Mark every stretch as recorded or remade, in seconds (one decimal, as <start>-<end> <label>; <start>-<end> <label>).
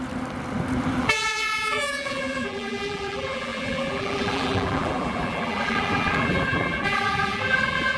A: 0.0-1.0 recorded; 1.0-8.0 remade